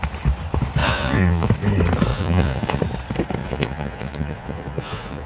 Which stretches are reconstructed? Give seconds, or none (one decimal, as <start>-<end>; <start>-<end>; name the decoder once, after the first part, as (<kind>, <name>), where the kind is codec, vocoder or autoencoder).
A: 0.8-1.5 (vocoder, Vocos); 2.1-2.8; 3.4-5.3